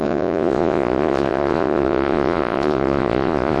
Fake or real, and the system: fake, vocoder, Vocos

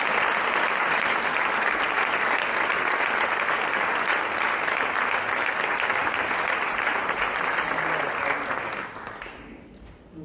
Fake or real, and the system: real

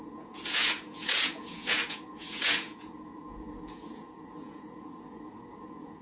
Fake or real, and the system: fake, vocoder, Vocos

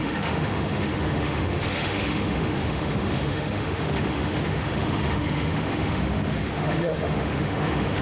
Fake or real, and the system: fake, autoencoder, DAC-VAE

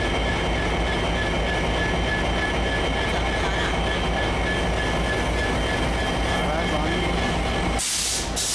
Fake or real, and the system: real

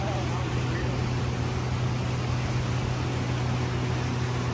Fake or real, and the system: real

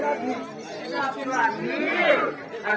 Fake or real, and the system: real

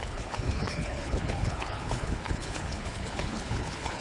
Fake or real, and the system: fake, codec, HILCodec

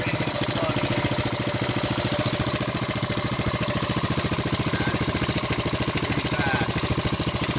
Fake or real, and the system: real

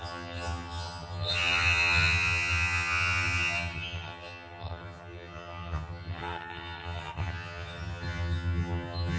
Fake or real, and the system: fake, vocoder, HiFi-GAN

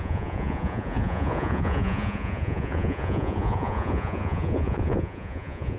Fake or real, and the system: fake, vocoder, Vocos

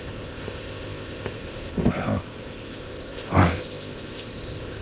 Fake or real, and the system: fake, codec, ZipCodec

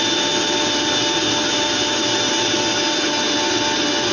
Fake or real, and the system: real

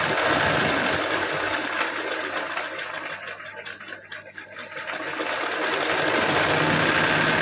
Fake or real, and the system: real